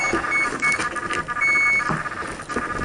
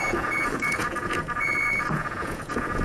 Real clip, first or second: first